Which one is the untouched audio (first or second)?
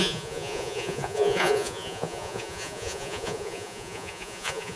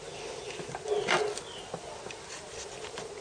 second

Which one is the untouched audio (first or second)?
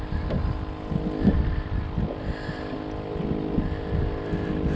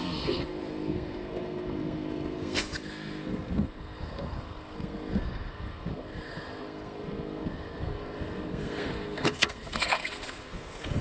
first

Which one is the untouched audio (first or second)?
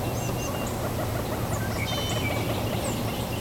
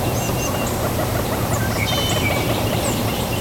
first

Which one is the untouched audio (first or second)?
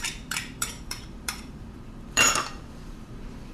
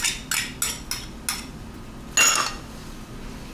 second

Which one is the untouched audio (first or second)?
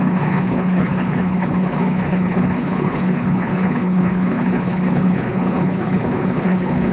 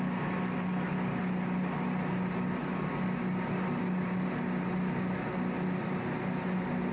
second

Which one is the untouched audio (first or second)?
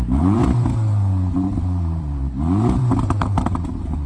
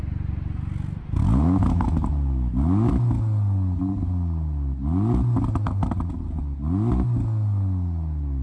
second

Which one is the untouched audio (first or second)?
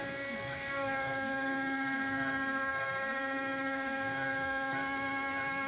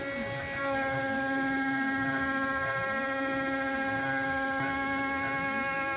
second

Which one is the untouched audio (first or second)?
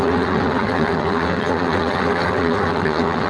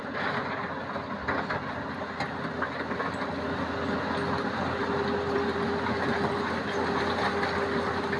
second